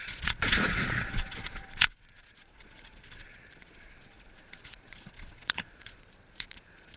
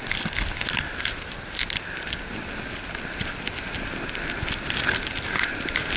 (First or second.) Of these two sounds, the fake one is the first